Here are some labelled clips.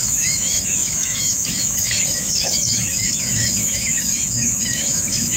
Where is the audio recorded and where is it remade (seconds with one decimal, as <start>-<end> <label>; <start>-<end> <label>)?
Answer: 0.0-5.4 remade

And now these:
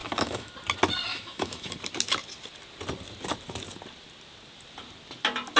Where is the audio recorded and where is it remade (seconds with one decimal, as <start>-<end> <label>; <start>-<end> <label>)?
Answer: 0.0-0.5 remade; 0.5-1.1 recorded; 1.1-1.7 remade; 1.7-5.6 recorded

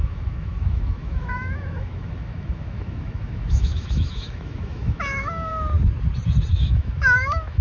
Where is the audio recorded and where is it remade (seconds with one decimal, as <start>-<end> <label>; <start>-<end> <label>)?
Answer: 0.0-5.5 remade; 5.5-6.5 recorded; 6.5-7.6 remade

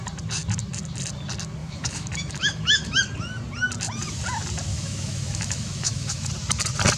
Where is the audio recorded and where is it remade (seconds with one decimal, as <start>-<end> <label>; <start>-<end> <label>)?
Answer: 0.0-1.6 recorded; 1.6-3.0 remade; 3.0-4.7 recorded; 4.7-6.3 remade; 6.3-7.0 recorded

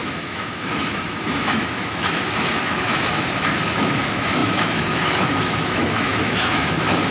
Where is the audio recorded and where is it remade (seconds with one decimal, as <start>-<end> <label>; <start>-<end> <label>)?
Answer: 0.0-7.1 remade